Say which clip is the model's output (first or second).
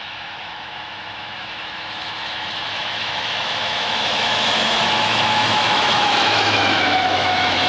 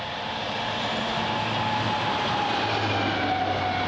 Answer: first